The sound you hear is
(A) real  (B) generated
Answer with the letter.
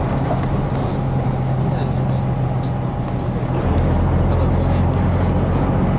A